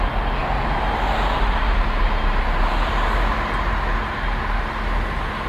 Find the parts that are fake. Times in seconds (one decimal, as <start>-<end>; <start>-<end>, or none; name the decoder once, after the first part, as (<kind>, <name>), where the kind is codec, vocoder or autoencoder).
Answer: none